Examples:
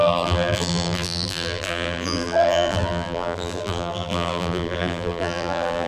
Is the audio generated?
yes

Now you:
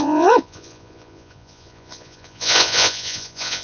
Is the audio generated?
yes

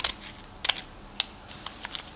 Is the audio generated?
no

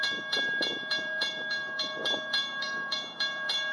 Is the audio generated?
yes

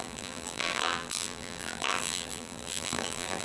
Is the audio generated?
yes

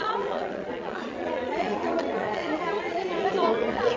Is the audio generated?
yes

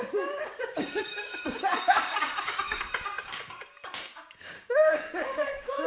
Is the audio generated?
yes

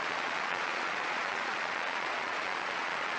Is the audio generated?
yes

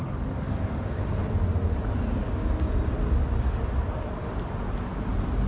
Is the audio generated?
no